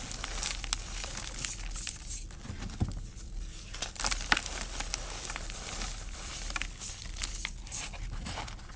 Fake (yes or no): no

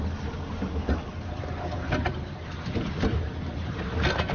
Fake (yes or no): no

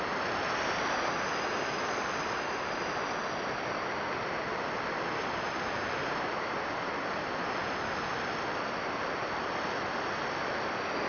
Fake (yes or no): no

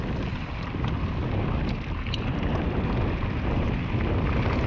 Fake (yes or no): no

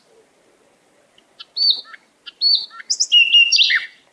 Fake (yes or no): no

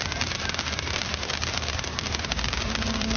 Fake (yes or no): yes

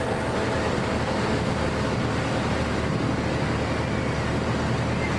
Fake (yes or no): no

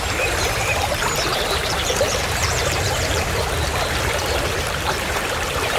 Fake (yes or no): yes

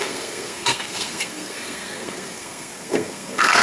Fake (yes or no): yes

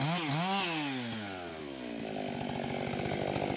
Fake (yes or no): no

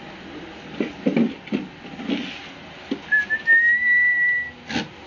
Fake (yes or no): no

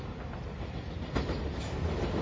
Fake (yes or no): no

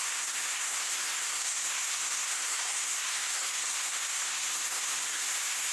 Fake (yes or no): yes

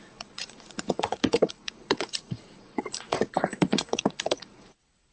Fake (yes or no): yes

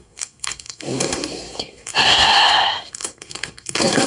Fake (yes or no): yes